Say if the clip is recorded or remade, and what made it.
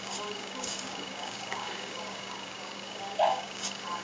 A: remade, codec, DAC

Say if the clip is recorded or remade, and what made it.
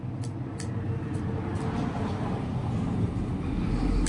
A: recorded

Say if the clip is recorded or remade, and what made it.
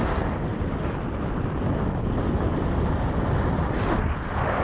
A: recorded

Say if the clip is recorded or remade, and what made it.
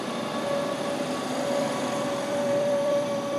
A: remade, vocoder, BigVGAN v2